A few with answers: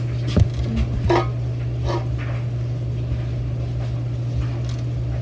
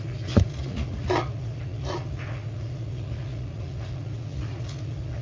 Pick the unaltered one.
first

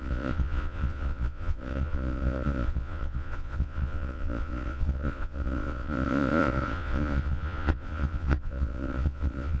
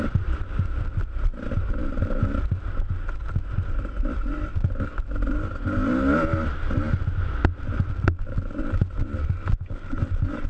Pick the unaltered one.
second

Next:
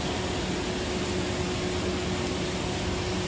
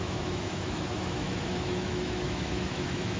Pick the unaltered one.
first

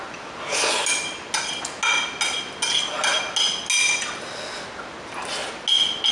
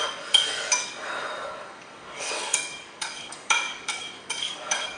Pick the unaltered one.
first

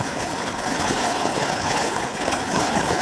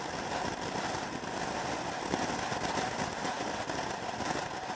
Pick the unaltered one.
second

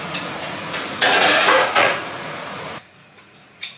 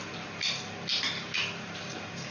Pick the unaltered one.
second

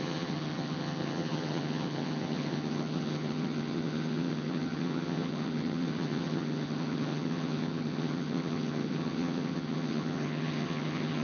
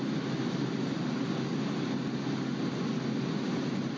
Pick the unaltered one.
second